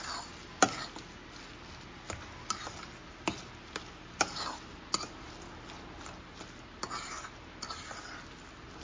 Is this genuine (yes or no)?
yes